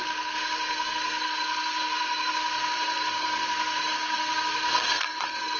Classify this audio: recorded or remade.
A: remade